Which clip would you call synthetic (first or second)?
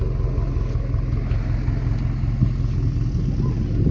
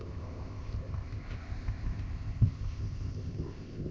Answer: second